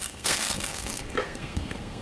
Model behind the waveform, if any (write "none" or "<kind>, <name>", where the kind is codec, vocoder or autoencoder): codec, SNAC